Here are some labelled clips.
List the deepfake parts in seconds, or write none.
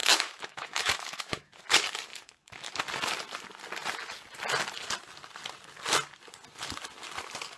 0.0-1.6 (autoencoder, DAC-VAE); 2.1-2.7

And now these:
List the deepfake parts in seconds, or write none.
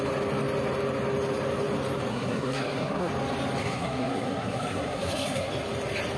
2.1-3.1 (codec, SNAC); 3.6-5.5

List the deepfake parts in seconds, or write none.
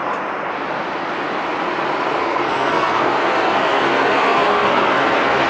2.2-5.5 (codec, SNAC)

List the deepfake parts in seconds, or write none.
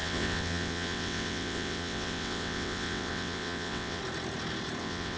0.0-4.0 (vocoder, WaveNeXt); 4.8-5.2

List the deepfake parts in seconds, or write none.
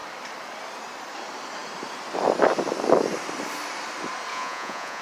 4.3-5.0 (vocoder, Vocos)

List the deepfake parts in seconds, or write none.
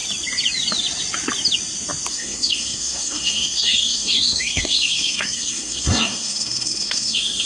2.1-7.5 (codec, SNAC)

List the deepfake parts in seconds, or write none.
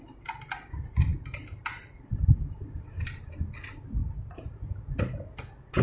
none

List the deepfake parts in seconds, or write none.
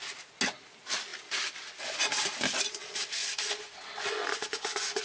3.2-5.0 (vocoder, Vocos)